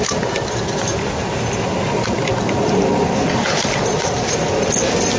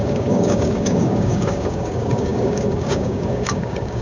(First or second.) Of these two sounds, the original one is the first